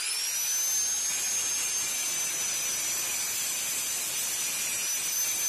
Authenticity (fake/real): real